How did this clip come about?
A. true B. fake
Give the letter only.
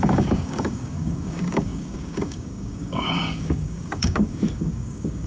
B